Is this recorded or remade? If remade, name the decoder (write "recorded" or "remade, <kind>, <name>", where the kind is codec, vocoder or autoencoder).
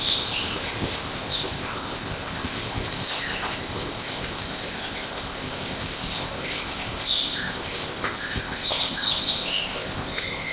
remade, codec, ZipCodec